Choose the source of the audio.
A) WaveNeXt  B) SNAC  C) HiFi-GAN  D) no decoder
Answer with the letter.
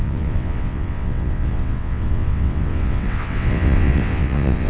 A